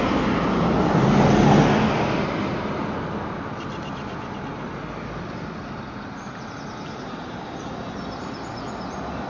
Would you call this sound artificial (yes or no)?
no